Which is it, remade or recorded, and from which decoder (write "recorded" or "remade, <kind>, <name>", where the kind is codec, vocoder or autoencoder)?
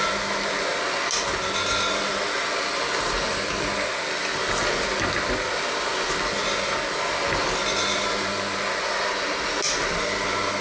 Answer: recorded